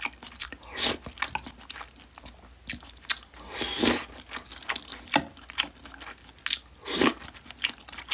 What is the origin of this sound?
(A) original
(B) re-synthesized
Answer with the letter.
A